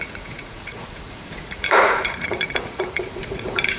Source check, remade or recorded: remade